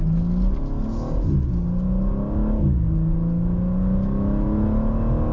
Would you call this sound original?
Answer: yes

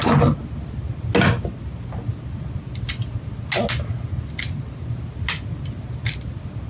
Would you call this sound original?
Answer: yes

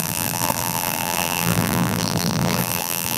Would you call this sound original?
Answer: no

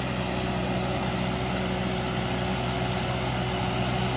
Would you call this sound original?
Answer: yes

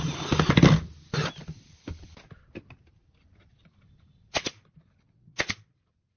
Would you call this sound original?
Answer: yes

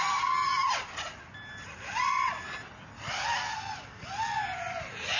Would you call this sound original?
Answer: yes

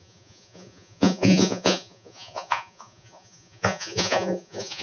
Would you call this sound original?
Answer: no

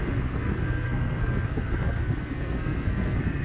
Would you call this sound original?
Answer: no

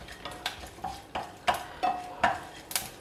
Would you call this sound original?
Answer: yes